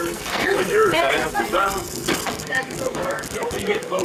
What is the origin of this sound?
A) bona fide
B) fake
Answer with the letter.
B